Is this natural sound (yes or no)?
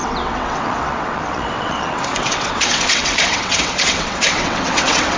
no